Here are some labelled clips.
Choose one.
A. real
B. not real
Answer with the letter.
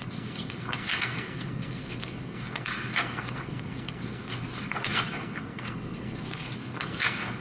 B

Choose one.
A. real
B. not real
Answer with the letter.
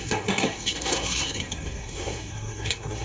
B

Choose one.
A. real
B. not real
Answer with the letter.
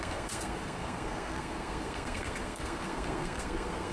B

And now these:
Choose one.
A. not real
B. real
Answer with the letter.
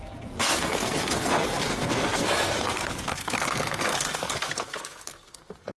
A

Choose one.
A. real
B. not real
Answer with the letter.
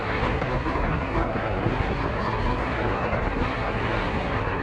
B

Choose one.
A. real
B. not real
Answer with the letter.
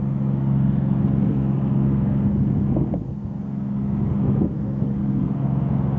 B